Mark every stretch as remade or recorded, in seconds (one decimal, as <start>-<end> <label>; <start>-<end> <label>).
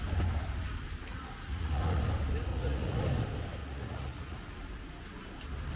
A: 0.0-1.1 recorded; 1.1-2.0 remade; 2.0-2.5 recorded; 2.5-3.0 remade; 3.0-3.6 recorded; 3.6-4.5 remade; 4.5-5.8 recorded